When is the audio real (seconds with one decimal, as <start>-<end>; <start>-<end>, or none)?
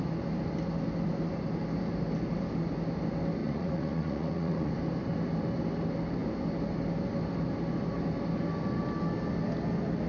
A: 0.0-3.4; 4.7-10.1